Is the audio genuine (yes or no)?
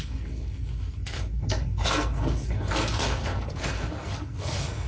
no